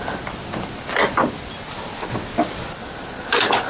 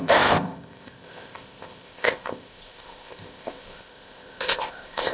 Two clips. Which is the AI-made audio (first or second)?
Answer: second